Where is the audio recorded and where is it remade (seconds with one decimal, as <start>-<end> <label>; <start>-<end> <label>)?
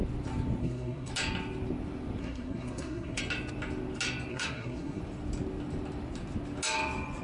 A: 0.0-0.6 recorded; 0.6-1.1 remade; 1.1-2.2 recorded; 2.2-3.2 remade; 3.2-4.3 recorded; 4.3-5.0 remade; 5.0-7.2 recorded